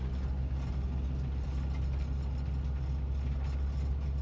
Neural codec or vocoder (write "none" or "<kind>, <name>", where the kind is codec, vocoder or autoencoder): none